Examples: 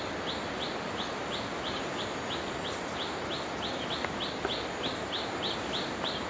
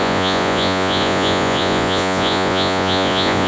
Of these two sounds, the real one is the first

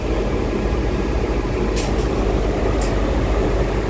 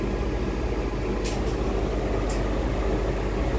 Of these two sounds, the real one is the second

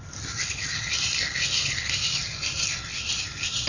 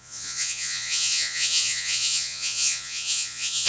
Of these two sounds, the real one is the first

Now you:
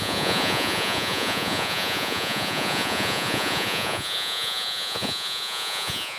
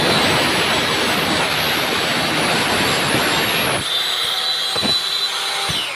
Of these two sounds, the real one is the second